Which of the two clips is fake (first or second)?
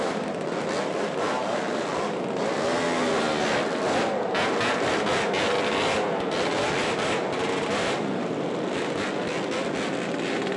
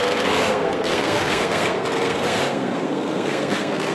second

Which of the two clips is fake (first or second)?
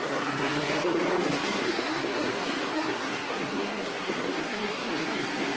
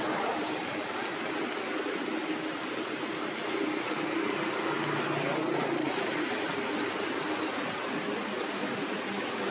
first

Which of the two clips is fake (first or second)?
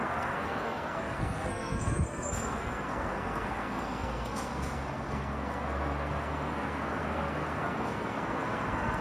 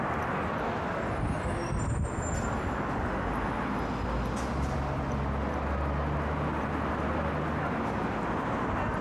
first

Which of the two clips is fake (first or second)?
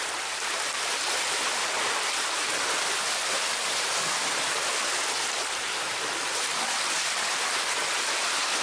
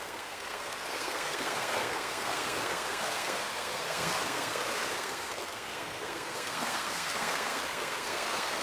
second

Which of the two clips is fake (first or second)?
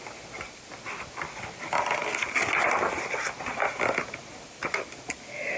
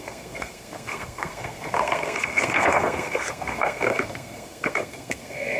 second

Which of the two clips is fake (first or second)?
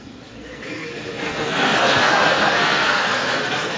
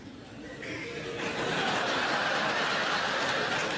first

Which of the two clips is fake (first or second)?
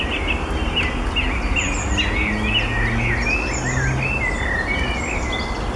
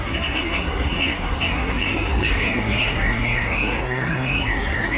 second